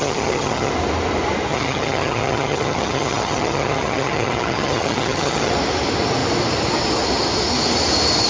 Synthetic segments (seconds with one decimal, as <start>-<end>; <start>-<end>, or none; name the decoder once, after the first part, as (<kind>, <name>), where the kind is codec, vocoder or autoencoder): 0.0-0.7 (vocoder, HiFi-GAN); 1.5-5.5